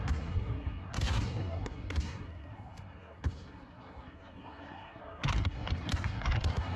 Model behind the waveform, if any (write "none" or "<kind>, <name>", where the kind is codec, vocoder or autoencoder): codec, SNAC